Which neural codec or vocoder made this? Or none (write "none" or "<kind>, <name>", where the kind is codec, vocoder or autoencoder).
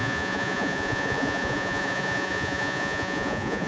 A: vocoder, Vocos